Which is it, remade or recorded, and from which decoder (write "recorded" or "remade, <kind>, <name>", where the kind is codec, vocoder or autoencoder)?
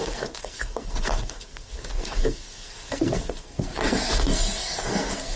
remade, codec, SNAC